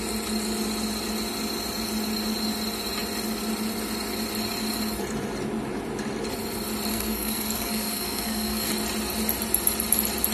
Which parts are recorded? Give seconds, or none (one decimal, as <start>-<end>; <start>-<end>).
0.0-6.9; 8.7-10.3